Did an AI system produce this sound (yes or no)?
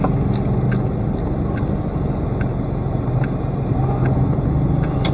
no